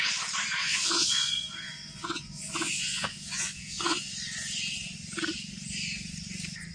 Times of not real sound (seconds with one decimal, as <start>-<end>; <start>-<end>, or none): 0.6-4.1